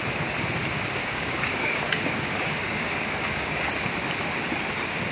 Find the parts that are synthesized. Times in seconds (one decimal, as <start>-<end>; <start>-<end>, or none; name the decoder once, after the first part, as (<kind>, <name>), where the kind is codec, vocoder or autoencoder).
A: 1.0-3.7 (codec, DAC)